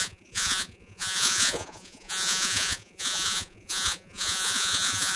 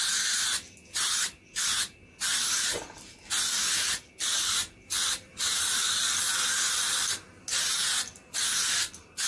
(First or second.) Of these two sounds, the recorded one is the second